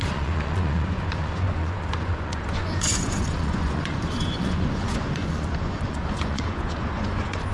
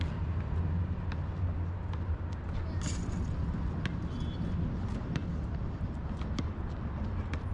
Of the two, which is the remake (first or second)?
first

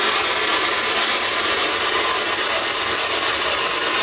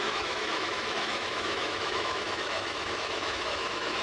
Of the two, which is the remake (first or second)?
second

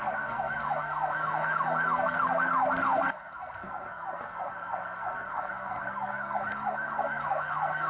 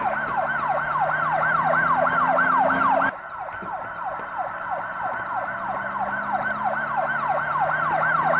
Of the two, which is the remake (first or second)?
first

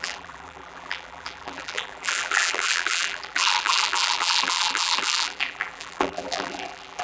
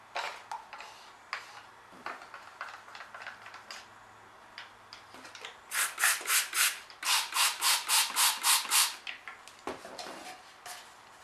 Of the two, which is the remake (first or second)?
first